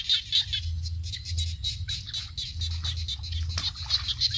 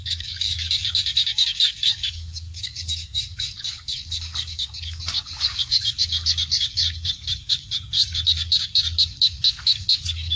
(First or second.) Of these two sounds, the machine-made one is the second